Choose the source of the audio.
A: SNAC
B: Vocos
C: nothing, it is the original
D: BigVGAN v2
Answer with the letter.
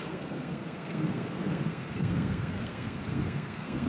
A